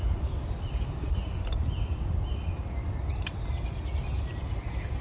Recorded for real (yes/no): yes